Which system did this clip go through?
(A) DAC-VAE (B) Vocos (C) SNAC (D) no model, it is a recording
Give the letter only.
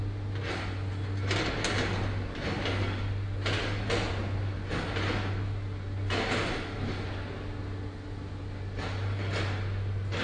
D